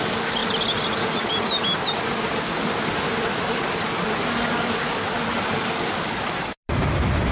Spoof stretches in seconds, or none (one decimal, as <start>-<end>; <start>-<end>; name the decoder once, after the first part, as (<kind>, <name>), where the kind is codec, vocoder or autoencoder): 5.3-6.5 (vocoder, BigVGAN v2)